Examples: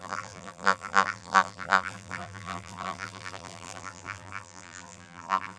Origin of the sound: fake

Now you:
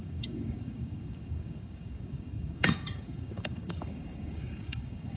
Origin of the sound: fake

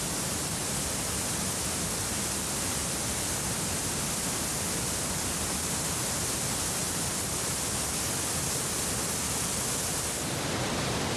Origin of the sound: real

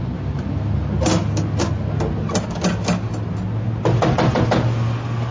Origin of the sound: real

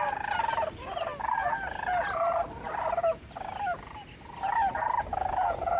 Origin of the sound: real